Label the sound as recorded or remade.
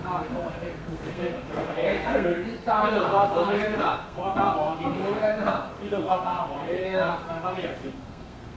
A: remade